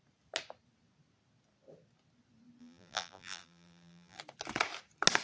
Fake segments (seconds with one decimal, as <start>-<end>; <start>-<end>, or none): 2.6-4.2